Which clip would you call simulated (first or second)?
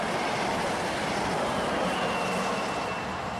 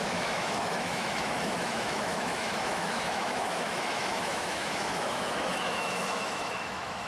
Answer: second